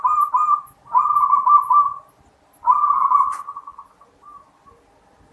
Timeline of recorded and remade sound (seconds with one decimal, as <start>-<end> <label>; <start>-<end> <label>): 0.0-5.3 recorded